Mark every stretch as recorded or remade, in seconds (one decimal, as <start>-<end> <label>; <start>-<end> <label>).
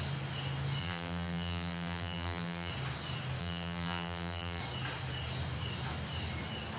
0.0-0.8 recorded; 0.8-2.7 remade; 2.7-3.4 recorded; 3.4-4.6 remade; 4.6-6.8 recorded